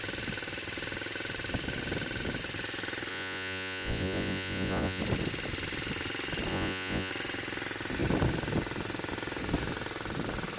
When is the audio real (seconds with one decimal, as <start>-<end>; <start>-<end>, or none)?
0.0-3.1; 5.0-6.5; 7.1-10.6